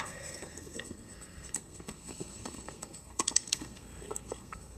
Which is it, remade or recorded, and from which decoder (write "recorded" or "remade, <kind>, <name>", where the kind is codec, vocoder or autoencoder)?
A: remade, codec, SNAC